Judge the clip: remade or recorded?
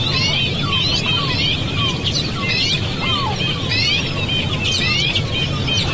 recorded